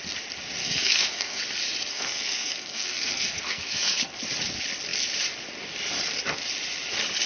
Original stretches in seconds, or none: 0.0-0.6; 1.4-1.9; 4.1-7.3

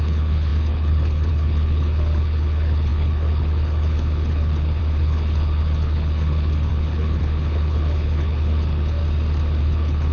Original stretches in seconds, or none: 9.0-9.6

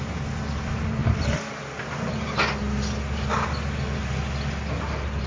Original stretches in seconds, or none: 0.0-5.3